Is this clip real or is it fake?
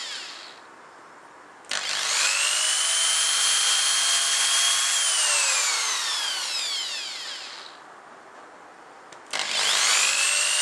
real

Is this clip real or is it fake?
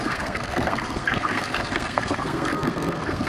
fake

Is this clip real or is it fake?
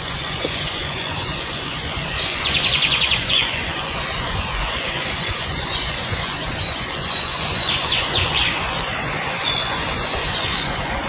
fake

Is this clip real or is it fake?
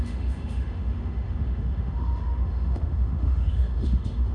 fake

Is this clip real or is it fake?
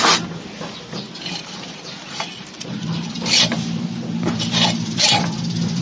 fake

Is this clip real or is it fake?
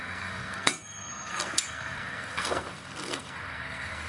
fake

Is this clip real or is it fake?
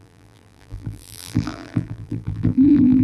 fake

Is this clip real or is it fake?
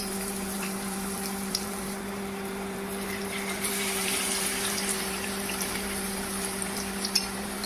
fake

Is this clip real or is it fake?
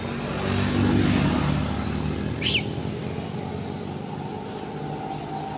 real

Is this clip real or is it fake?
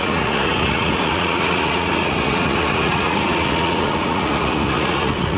fake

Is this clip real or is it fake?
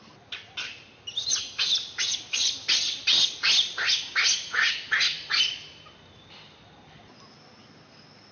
real